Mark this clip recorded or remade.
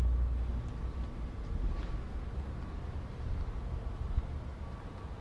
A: recorded